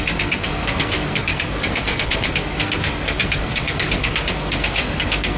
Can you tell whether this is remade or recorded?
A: remade